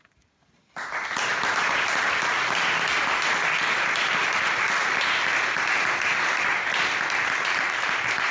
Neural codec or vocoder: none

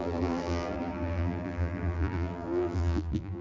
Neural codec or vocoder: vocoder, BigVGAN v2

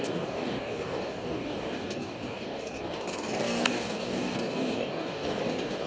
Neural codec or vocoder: codec, DAC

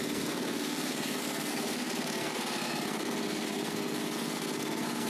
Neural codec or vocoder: codec, SNAC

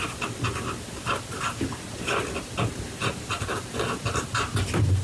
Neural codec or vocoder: none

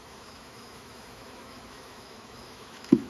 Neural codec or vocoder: autoencoder, DAC-VAE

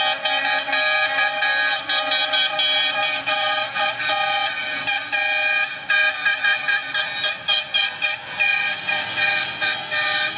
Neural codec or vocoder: none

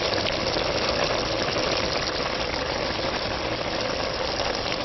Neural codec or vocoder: none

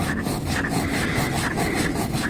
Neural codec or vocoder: none